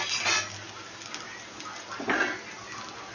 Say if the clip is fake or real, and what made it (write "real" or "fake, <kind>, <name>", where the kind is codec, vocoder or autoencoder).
real